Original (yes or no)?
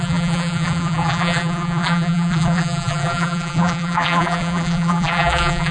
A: no